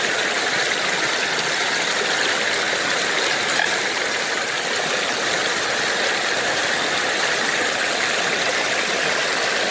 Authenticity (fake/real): real